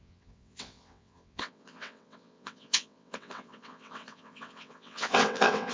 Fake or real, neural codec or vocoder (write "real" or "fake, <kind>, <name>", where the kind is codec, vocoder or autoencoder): fake, vocoder, WaveNeXt